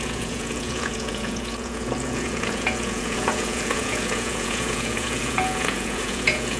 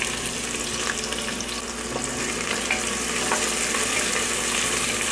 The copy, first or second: first